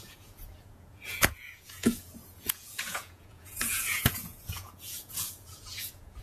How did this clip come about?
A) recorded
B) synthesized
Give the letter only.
B